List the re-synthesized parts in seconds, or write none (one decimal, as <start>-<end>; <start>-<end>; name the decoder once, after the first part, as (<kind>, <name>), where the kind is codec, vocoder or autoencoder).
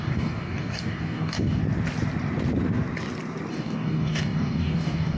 0.0-1.6 (codec, DAC); 3.5-5.2